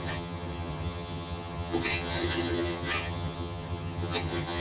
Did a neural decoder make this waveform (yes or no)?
yes